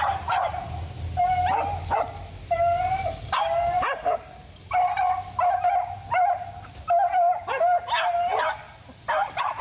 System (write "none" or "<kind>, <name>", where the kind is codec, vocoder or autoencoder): none